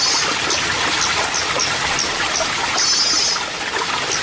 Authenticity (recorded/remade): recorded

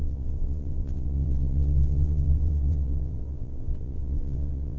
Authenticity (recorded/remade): remade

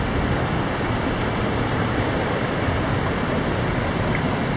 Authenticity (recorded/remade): recorded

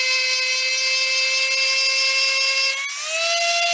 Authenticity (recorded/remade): recorded